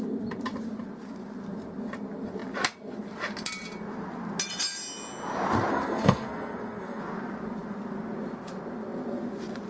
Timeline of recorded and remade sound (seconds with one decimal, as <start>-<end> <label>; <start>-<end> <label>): 0.0-5.7 recorded; 5.7-7.0 remade; 7.0-9.7 recorded